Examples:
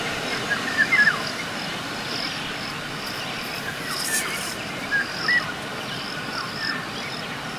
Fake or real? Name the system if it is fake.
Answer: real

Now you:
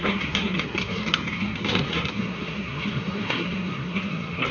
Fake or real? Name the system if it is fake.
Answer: fake, codec, SNAC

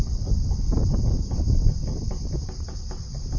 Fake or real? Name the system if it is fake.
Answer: real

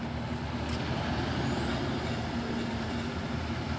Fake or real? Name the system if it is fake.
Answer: real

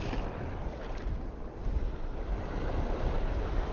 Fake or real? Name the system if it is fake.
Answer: fake, vocoder, BigVGAN v2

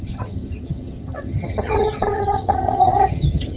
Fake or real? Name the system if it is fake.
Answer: fake, vocoder, HiFi-GAN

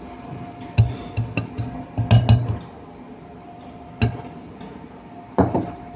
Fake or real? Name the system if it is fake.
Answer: real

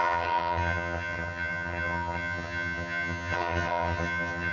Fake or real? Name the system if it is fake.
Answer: fake, vocoder, HiFi-GAN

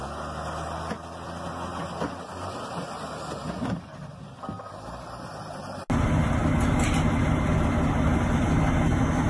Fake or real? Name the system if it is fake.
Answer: real